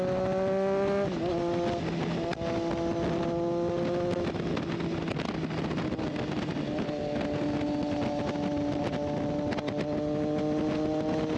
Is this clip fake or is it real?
real